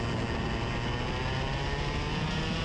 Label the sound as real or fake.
real